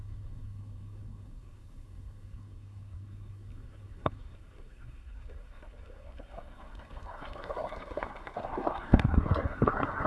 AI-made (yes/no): yes